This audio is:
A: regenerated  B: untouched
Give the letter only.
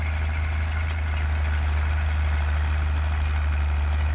B